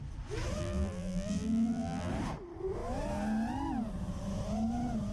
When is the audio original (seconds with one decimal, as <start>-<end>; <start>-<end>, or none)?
0.0-0.6; 2.1-5.1